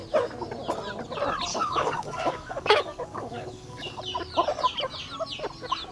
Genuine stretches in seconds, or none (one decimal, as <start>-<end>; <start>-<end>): 0.0-1.5; 4.0-5.9